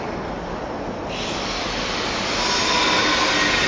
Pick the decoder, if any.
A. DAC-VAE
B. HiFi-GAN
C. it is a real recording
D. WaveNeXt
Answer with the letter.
C